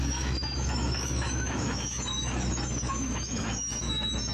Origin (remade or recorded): remade